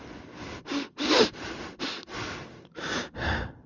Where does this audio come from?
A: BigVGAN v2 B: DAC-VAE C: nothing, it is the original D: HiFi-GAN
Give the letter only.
C